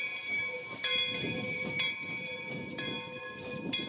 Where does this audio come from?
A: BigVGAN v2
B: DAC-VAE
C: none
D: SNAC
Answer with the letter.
A